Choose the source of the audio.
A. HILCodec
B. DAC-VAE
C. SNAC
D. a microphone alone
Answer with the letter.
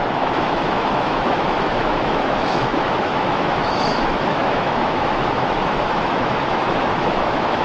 B